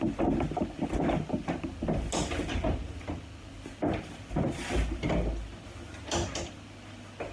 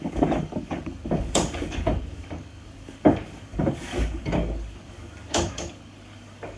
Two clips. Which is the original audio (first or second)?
first